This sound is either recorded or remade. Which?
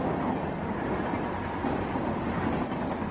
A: recorded